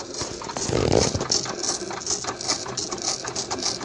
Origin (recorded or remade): recorded